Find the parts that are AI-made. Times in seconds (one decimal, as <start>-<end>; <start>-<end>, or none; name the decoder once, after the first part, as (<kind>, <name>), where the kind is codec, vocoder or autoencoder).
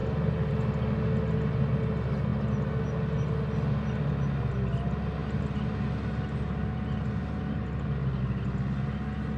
none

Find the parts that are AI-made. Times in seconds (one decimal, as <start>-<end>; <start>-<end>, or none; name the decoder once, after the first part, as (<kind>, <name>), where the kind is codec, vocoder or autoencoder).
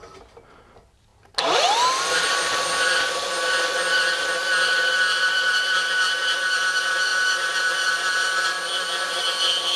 none